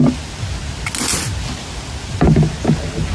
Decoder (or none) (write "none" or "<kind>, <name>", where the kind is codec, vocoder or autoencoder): none